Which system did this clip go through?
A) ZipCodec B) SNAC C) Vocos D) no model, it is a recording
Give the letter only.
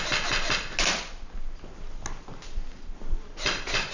D